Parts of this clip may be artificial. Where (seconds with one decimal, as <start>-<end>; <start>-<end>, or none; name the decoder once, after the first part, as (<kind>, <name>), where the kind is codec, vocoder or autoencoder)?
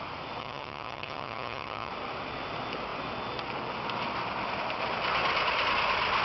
0.4-1.9 (vocoder, HiFi-GAN)